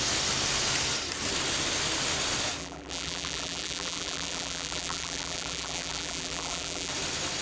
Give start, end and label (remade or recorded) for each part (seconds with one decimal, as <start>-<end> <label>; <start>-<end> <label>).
0.0-2.6 recorded; 2.6-6.9 remade; 6.9-7.4 recorded